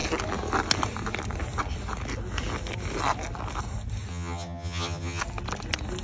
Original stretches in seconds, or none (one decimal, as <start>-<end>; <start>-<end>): 0.0-4.1; 5.2-6.0